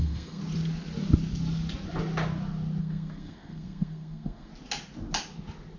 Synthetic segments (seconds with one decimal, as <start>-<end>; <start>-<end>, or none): 0.0-0.4; 2.8-4.5